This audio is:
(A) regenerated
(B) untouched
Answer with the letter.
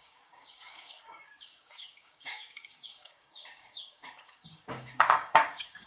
A